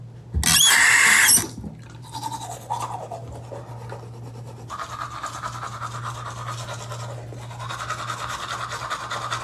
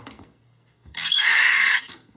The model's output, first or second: second